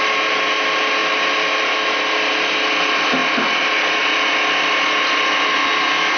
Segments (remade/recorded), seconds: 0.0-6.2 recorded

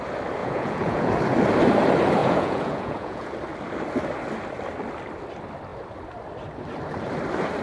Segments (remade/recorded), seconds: 0.0-0.4 recorded; 0.4-1.2 remade; 1.2-2.2 recorded; 2.2-3.3 remade; 3.3-7.6 recorded